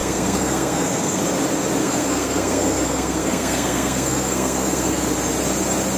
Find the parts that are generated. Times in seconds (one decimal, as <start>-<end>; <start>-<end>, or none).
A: 0.0-1.2; 1.8-5.0